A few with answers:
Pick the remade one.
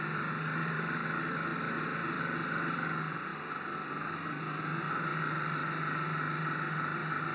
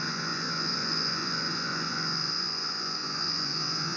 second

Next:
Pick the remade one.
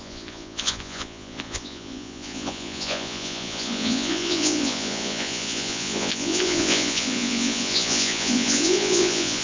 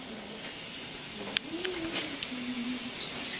first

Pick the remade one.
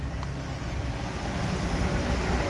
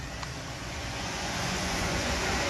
second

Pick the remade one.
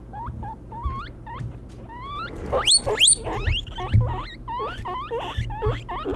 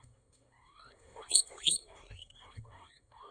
second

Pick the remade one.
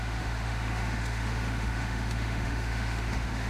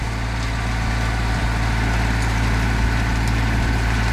first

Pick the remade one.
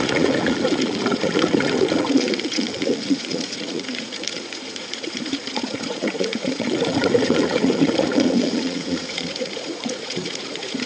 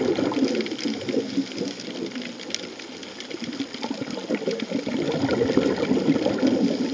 first